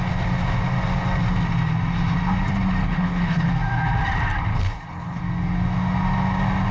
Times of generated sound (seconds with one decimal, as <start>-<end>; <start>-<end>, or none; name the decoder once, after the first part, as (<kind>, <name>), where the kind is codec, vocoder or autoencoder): 2.8-3.5 (codec, HILCodec); 4.5-5.2

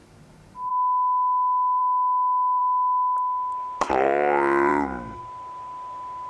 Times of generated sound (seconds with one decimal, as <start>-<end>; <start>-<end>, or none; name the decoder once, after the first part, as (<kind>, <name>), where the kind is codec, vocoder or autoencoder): 4.7-5.2 (autoencoder, DAC-VAE)

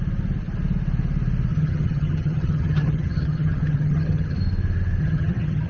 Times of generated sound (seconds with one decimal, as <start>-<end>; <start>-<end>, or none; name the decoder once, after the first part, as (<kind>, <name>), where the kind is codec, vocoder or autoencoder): 1.5-4.4 (vocoder, HiFi-GAN); 5.0-5.7

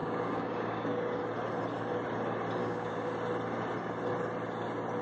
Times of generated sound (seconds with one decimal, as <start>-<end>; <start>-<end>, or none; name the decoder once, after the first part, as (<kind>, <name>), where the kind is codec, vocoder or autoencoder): 0.0-1.2 (codec, DAC); 2.6-3.1

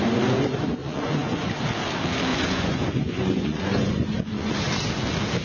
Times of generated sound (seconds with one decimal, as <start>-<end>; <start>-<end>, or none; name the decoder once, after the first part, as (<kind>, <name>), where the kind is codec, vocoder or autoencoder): 0.8-1.5 (vocoder, Vocos); 2.3-4.5

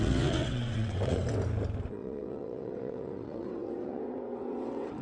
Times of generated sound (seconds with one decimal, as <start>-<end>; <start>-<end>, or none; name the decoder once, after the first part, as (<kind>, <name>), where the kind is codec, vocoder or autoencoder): 0.0-1.2 (vocoder, WaveNeXt); 1.9-5.0